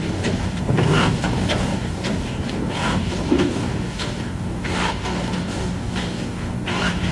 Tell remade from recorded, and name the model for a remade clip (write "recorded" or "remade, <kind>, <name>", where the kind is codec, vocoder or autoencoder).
remade, codec, DAC